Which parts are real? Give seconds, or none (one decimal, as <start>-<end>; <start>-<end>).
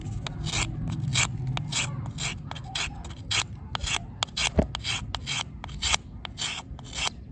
0.0-7.3